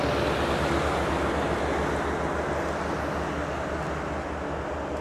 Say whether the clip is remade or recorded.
recorded